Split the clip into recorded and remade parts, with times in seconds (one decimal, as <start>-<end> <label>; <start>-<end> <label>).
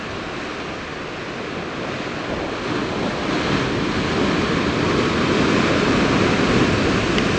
0.0-7.4 recorded